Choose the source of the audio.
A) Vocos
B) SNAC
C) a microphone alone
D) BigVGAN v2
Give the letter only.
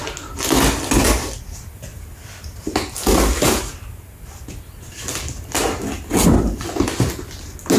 C